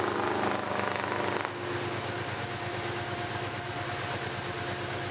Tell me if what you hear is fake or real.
real